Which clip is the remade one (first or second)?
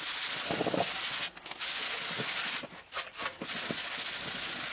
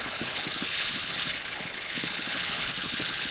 second